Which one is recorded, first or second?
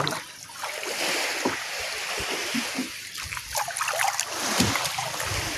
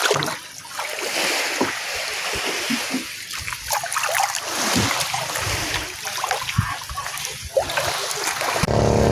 second